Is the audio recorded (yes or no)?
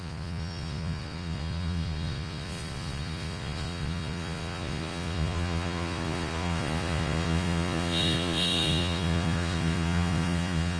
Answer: no